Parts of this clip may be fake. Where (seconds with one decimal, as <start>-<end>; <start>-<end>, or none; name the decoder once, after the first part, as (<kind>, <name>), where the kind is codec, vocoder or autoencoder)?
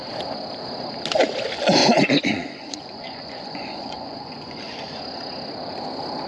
1.8-5.0 (vocoder, Vocos)